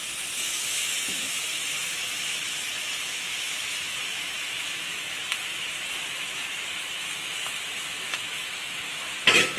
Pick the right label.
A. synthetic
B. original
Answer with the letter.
A